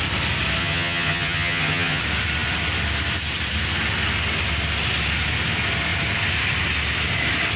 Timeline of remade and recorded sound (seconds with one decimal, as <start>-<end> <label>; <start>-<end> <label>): 0.0-0.6 recorded; 0.6-2.0 remade; 2.0-7.6 recorded